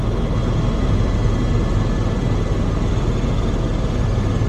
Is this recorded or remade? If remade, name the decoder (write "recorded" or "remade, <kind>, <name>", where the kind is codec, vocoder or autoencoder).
recorded